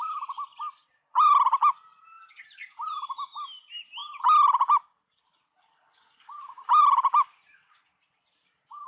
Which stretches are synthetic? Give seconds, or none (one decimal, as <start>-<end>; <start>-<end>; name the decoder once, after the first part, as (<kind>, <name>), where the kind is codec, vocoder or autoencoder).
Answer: 0.5-2.4 (vocoder, BigVGAN v2)